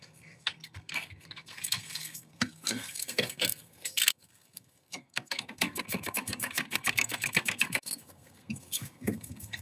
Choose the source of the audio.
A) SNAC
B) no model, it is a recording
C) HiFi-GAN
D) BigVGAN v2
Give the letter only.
A